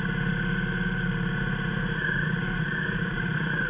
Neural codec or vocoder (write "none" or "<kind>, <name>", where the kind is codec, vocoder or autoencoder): none